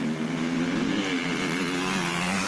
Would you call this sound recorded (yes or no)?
yes